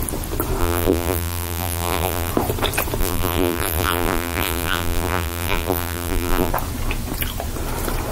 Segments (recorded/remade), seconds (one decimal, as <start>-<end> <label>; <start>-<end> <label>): 0.0-0.6 recorded; 0.6-2.3 remade; 2.3-3.0 recorded; 3.0-6.5 remade; 6.5-8.1 recorded